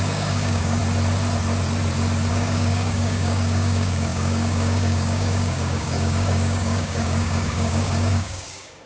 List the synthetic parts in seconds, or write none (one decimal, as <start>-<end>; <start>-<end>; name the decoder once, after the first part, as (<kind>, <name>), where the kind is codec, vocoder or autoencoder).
0.0-0.8 (codec, DAC); 2.3-8.9